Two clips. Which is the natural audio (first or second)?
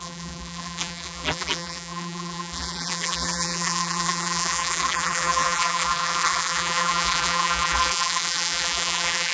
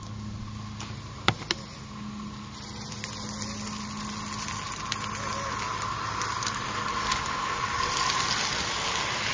second